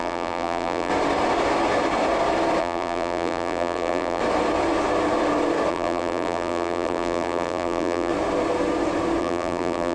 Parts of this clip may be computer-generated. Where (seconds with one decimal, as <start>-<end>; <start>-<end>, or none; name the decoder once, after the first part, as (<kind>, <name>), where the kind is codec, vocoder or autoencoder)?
0.0-0.9 (vocoder, BigVGAN v2); 2.6-4.2; 5.7-8.1; 9.2-9.9

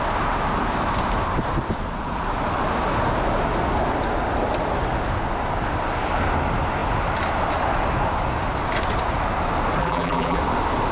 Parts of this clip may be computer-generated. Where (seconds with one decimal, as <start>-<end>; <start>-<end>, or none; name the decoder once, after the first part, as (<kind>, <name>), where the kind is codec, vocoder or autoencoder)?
9.8-10.4 (vocoder, BigVGAN v2)

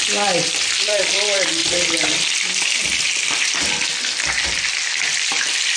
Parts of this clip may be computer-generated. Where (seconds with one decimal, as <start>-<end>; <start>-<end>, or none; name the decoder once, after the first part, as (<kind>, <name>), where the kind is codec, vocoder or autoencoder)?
0.0-1.6 (vocoder, BigVGAN v2); 3.0-5.8

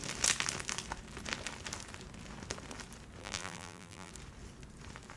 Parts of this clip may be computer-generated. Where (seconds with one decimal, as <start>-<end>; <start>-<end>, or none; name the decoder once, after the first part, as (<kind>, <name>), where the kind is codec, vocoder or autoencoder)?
3.2-4.1 (vocoder, BigVGAN v2)